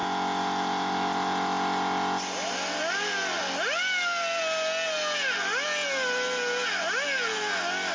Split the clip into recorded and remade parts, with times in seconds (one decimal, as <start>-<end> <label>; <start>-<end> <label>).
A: 0.0-7.9 recorded